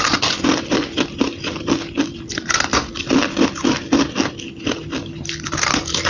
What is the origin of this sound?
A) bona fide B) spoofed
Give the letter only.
A